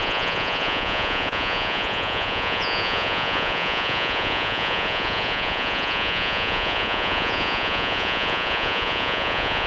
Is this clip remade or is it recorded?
remade